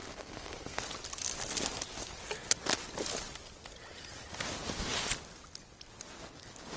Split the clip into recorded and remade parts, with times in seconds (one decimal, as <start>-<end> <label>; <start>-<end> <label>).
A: 0.0-0.8 remade; 0.8-6.8 recorded